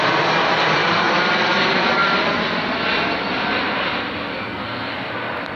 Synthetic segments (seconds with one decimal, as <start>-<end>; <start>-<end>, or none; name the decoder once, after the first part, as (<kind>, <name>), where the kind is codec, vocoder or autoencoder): 4.3-5.1 (codec, SNAC)